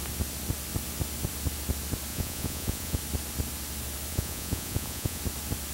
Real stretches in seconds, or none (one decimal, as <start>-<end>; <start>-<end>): 0.0-2.1; 3.0-4.1; 5.2-5.7